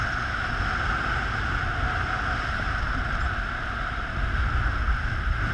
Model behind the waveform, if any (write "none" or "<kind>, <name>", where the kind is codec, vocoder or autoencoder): none